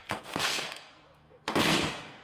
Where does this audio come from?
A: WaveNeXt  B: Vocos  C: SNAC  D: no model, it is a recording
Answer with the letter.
C